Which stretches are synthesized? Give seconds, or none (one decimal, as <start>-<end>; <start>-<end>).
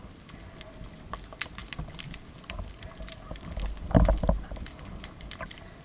none